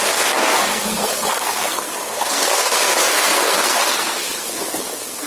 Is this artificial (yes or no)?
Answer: yes